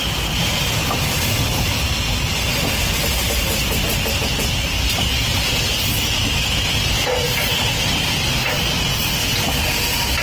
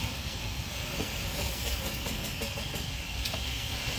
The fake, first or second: second